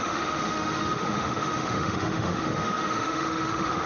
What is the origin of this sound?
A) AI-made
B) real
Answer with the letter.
A